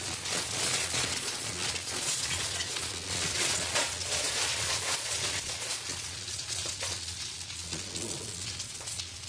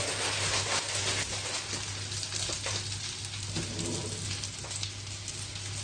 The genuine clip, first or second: second